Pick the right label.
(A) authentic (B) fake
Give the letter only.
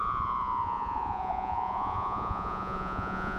B